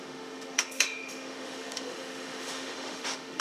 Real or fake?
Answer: fake